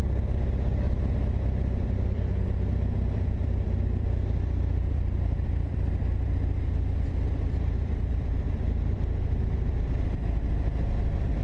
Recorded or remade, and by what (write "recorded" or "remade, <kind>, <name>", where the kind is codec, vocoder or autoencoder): remade, vocoder, BigVGAN v2